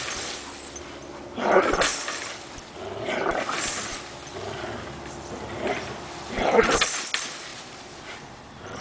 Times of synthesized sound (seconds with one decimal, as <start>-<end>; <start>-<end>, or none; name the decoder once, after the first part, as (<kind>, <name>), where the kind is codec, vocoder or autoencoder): 7.5-8.8 (vocoder, BigVGAN v2)